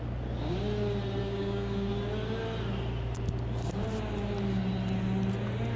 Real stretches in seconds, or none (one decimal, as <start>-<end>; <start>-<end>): 0.0-1.2; 1.9-5.8